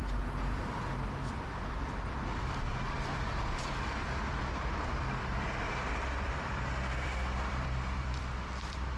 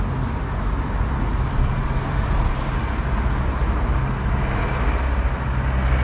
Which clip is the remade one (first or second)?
first